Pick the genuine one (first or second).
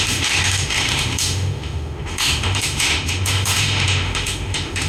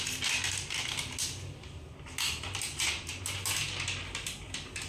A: second